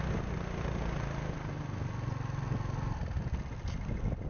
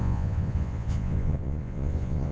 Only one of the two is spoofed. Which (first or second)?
second